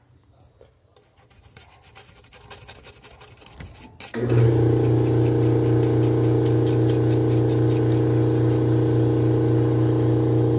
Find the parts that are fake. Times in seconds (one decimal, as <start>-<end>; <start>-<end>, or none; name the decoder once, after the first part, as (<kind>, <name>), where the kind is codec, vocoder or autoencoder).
none